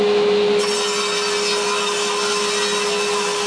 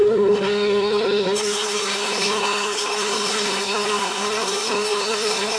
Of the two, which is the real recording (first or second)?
first